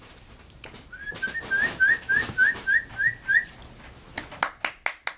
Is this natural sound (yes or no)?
yes